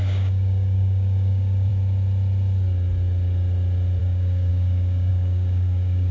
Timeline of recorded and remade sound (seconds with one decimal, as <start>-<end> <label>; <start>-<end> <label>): 0.0-1.7 remade; 1.7-4.0 recorded; 4.0-6.1 remade